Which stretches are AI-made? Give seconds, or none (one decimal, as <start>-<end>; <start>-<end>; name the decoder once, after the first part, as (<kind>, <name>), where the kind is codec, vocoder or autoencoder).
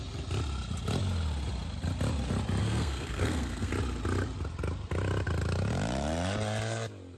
2.6-3.7 (codec, SNAC)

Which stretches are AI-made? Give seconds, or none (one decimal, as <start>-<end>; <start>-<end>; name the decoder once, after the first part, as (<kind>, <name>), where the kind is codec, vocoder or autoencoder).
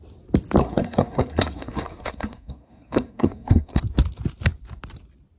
0.6-3.8 (codec, SNAC)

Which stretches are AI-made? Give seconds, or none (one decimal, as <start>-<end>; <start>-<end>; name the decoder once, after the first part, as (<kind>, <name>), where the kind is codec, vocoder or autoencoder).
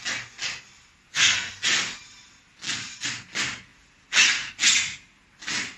1.1-1.6 (codec, SNAC)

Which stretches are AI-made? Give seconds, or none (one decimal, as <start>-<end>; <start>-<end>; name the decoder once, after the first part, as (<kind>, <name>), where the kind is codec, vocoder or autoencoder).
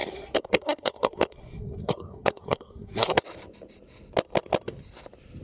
0.0-3.2 (codec, SNAC)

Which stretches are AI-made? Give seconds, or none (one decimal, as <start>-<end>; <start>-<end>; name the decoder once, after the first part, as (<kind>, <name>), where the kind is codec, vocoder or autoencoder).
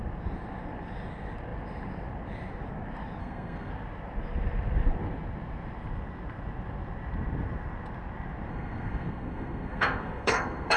3.2-3.7 (codec, SNAC); 8.5-10.8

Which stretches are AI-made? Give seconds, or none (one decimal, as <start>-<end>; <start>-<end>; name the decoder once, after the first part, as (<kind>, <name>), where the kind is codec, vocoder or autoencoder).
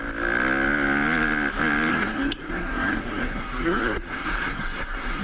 1.9-5.2 (codec, SNAC)